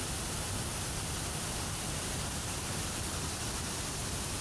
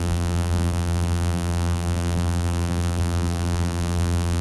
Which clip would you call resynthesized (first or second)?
second